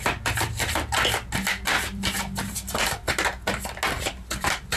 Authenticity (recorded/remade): recorded